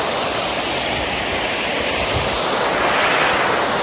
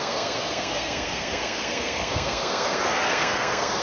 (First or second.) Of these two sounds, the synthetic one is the second